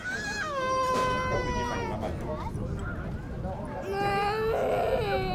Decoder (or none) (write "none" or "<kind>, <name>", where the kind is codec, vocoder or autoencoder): none